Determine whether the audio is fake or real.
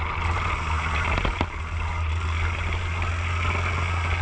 real